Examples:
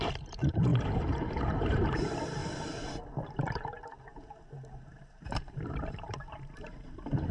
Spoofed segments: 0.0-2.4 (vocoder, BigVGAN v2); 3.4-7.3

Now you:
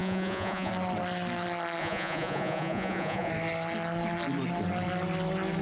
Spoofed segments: 0.0-0.7 (vocoder, Vocos); 1.8-3.3